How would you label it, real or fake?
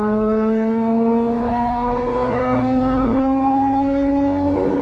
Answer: fake